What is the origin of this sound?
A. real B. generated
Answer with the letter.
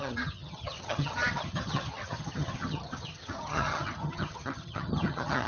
B